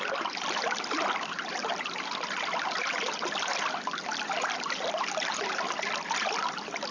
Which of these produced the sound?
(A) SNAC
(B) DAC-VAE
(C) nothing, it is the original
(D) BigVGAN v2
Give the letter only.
D